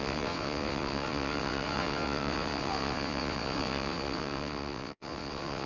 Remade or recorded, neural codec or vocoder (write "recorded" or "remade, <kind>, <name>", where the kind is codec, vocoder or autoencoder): remade, vocoder, WaveNeXt